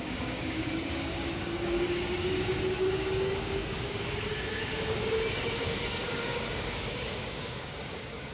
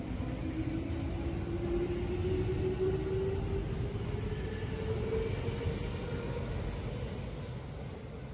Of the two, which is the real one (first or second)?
second